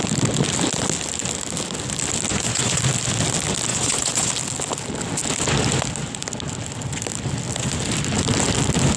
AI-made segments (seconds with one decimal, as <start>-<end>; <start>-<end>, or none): 2.3-2.8; 3.7-4.3

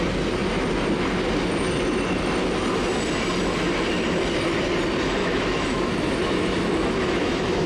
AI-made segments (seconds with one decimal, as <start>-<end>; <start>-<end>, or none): 5.2-7.7